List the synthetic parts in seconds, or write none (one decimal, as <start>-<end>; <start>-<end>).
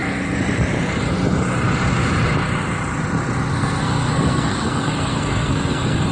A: 3.5-6.1